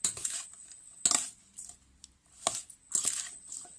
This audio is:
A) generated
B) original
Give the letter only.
B